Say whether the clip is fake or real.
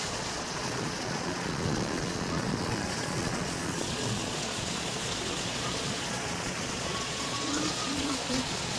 fake